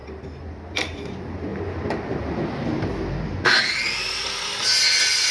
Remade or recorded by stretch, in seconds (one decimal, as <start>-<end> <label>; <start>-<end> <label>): 0.0-5.3 recorded